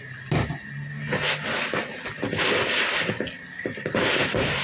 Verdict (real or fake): real